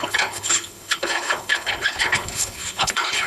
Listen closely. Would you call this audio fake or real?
fake